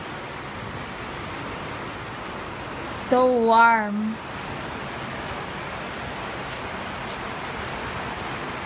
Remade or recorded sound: recorded